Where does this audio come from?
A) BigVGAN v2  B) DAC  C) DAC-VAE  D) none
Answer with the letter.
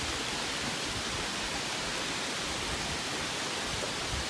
D